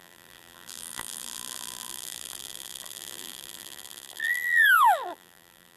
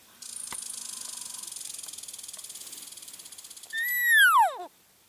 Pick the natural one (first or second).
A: second